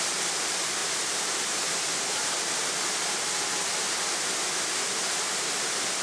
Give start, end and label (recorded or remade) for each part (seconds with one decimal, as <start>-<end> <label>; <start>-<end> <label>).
0.0-0.8 recorded; 0.8-3.2 remade; 3.2-6.0 recorded